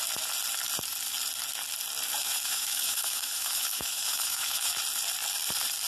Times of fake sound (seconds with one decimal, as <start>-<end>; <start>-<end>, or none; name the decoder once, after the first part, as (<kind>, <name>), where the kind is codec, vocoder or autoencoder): 2.2-4.8 (autoencoder, DAC-VAE)